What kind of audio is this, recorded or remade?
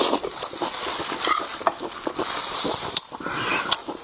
recorded